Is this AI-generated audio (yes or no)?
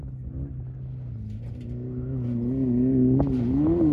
no